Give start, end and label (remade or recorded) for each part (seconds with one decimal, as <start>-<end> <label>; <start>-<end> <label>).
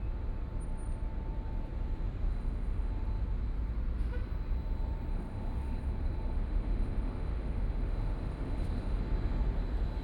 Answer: 0.0-2.3 recorded; 2.3-2.9 remade; 2.9-5.1 recorded; 5.1-9.0 remade; 9.0-10.0 recorded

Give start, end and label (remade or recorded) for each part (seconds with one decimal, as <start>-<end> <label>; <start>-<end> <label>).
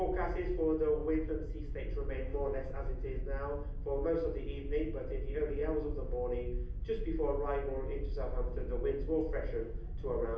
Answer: 0.0-2.3 recorded; 2.3-3.2 remade; 3.2-10.4 recorded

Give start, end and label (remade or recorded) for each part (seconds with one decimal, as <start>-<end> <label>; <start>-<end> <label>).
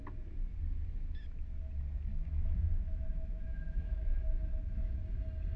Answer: 0.0-2.1 recorded; 2.1-5.0 remade; 5.0-5.6 recorded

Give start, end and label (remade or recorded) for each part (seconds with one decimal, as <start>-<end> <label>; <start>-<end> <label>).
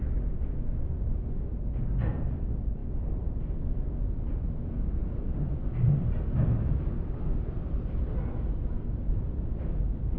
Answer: 0.0-10.2 recorded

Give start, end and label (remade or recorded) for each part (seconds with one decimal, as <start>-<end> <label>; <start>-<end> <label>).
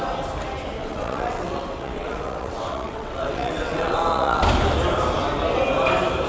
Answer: 0.0-0.8 recorded; 0.8-4.4 remade; 4.4-6.3 recorded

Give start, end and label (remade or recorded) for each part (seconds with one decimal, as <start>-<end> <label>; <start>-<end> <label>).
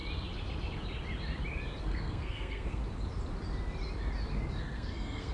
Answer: 0.0-1.8 recorded; 1.8-2.8 remade; 2.8-4.6 recorded; 4.6-5.3 remade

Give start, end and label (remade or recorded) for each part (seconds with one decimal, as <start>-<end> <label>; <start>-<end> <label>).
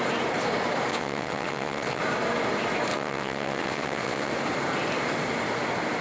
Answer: 0.0-0.9 recorded; 0.9-2.0 remade; 2.0-2.9 recorded; 2.9-4.3 remade; 4.3-6.0 recorded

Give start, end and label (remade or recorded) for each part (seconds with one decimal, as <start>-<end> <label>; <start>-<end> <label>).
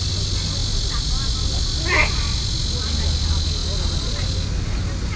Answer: 0.0-5.2 recorded